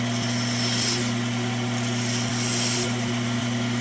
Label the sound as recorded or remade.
recorded